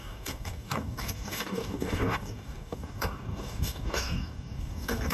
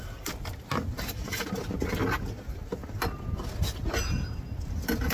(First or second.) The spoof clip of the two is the first